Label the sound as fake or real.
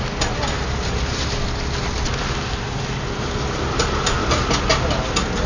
real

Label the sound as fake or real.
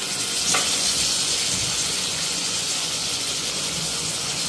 fake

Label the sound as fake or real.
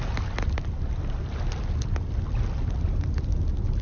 real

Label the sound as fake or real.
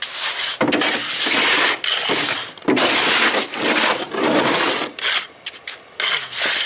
real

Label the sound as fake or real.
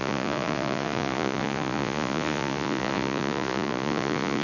fake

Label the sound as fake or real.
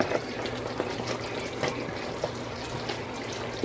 real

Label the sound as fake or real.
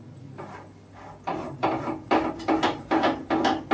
real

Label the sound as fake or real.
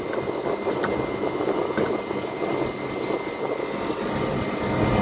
real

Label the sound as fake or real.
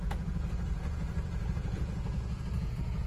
fake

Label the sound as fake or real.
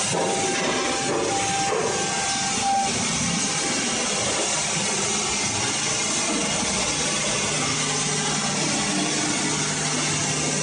real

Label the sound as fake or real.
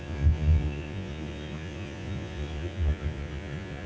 fake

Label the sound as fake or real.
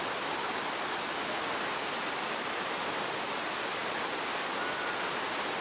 real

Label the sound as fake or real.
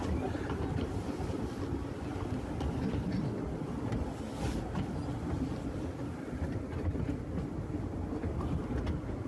real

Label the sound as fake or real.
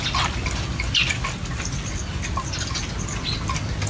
real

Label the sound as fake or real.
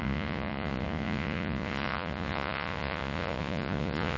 fake